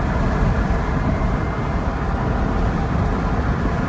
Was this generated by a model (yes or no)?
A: no